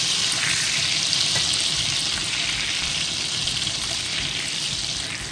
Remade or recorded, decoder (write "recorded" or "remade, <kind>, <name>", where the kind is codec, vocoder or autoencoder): recorded